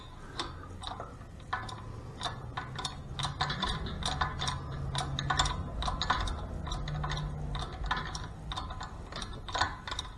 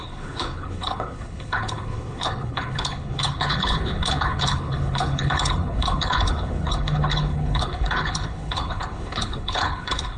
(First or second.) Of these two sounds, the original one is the first